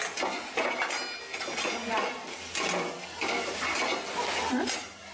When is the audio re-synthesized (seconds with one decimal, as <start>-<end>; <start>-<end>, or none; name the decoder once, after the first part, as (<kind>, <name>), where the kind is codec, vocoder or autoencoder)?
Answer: none